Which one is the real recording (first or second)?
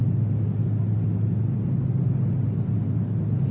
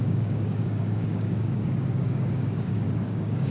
first